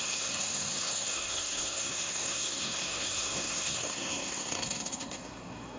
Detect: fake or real fake